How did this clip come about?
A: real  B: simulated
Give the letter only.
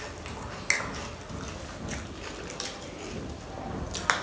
A